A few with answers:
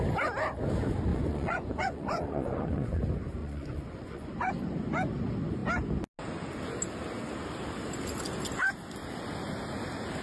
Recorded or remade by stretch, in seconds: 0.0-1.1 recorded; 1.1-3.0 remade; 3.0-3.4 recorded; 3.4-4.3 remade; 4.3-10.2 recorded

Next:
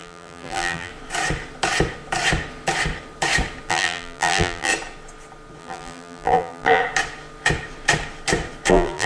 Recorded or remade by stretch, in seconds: 0.0-0.9 remade; 0.9-3.7 recorded; 3.7-4.7 remade; 4.7-5.6 recorded; 5.6-6.8 remade; 6.8-8.7 recorded; 8.7-9.1 remade

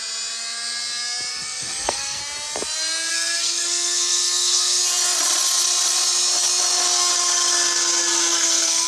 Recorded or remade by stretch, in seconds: 0.0-1.3 recorded; 1.3-2.2 remade; 2.2-3.1 recorded; 3.1-4.8 remade; 4.8-8.3 recorded; 8.3-8.9 remade

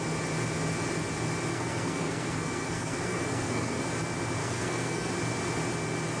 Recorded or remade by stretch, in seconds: 0.0-1.5 recorded; 1.5-3.8 remade; 3.8-4.4 recorded; 4.4-5.1 remade; 5.1-6.2 recorded

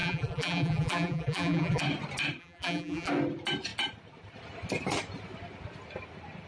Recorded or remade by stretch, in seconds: 0.0-1.8 remade; 1.8-2.4 recorded; 2.4-3.1 remade; 3.1-6.5 recorded

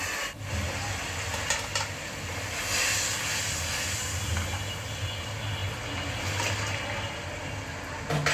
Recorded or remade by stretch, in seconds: 0.0-8.3 recorded

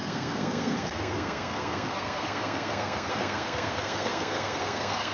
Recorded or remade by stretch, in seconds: 0.0-5.1 remade